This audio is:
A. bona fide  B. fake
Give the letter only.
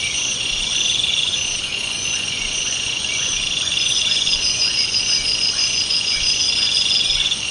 B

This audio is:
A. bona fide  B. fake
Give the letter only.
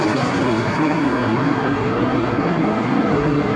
B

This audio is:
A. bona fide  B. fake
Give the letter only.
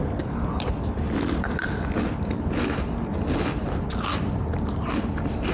A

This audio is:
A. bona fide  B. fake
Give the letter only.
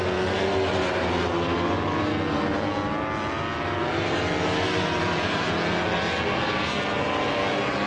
A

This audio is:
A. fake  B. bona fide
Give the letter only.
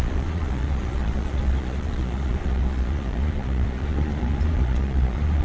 A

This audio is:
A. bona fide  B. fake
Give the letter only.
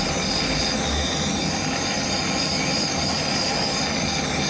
A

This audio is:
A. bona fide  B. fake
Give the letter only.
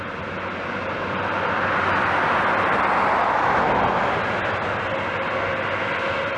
A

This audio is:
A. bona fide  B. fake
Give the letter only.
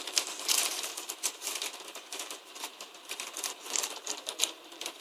B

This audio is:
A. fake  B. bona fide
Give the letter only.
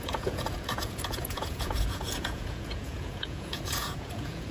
A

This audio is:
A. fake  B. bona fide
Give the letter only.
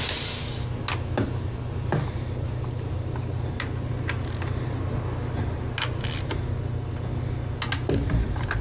B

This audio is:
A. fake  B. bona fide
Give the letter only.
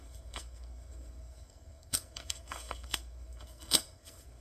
A